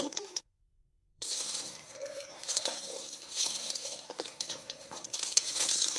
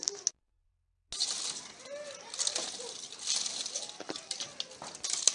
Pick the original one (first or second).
second